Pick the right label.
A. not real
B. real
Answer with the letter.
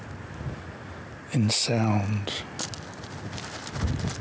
B